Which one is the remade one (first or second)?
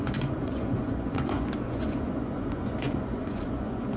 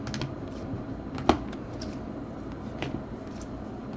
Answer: first